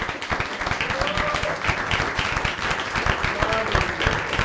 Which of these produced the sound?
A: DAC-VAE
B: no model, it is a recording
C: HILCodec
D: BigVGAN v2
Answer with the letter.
B